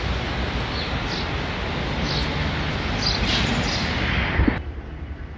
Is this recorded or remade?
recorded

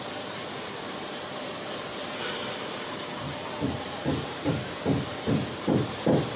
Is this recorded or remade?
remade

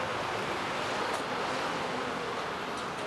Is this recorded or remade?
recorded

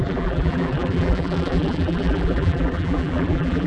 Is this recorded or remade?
remade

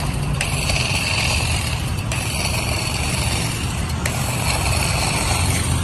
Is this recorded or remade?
remade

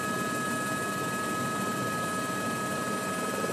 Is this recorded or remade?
recorded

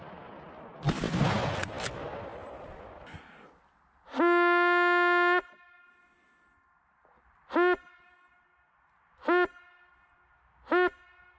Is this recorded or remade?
recorded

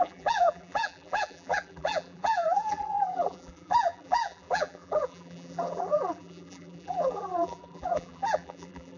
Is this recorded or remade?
remade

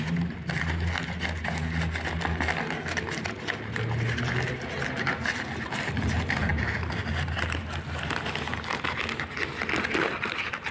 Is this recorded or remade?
recorded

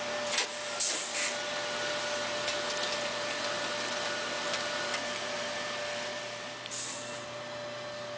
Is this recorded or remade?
recorded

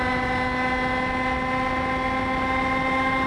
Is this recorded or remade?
recorded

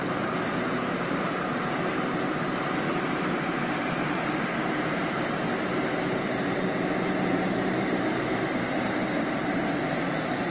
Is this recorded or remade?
remade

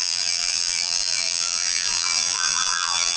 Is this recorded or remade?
remade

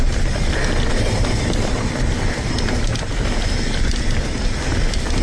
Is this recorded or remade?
recorded